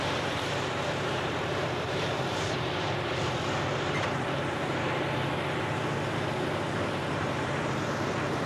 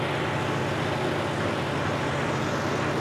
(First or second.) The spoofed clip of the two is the first